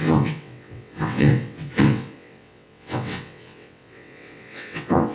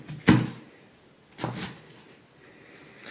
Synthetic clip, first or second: first